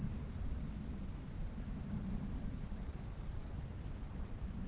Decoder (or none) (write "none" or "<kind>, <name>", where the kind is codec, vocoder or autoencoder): none